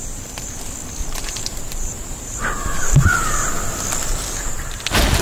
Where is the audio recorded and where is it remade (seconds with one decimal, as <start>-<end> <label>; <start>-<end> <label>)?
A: 0.0-0.6 remade; 0.6-1.0 recorded; 1.0-3.6 remade; 3.6-4.1 recorded; 4.1-4.8 remade; 4.8-5.2 recorded